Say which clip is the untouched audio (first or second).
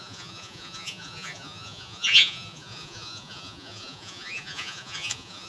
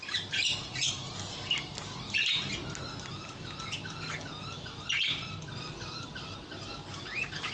second